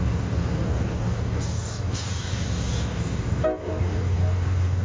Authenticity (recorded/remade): remade